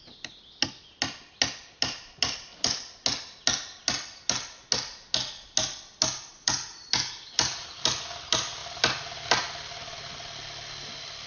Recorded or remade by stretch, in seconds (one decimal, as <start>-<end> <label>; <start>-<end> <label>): 0.0-6.3 recorded; 6.3-6.9 remade; 6.9-11.3 recorded